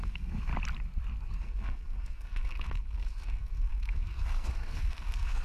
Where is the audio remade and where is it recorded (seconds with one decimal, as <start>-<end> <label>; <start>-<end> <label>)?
0.0-0.5 remade; 0.5-1.2 recorded; 1.2-5.4 remade